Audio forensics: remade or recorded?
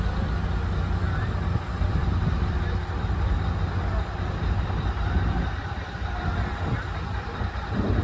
recorded